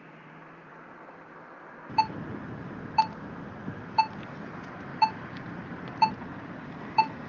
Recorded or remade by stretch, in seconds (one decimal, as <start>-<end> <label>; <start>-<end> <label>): 0.0-7.3 remade